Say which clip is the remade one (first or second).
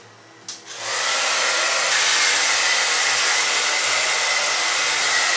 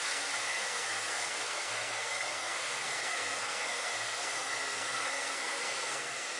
second